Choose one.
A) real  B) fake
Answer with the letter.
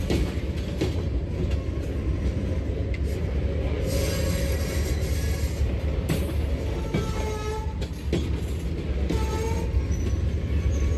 A